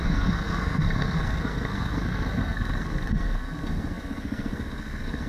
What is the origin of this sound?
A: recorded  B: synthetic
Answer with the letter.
B